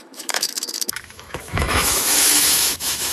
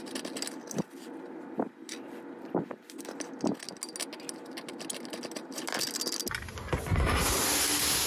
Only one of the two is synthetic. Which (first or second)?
first